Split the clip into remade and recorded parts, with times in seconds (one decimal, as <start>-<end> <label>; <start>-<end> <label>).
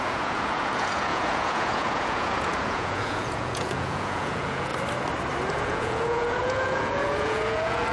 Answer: 0.0-4.7 remade; 4.7-5.5 recorded; 5.5-7.9 remade